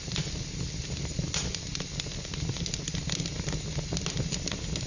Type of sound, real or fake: real